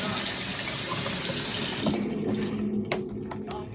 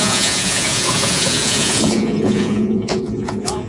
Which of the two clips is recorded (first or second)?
first